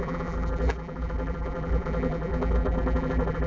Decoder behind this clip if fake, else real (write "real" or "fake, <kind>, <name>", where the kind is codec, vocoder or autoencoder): fake, vocoder, BigVGAN v2